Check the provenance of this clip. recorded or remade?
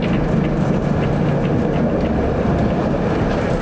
recorded